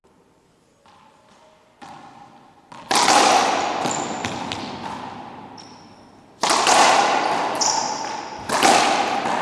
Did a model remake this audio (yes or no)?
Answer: no